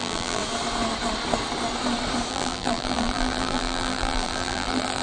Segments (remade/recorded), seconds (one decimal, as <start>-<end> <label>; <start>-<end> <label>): 0.0-0.4 remade; 0.4-2.3 recorded; 2.3-5.0 remade